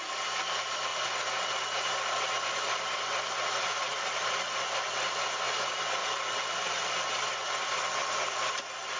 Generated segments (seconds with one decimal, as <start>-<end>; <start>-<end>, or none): none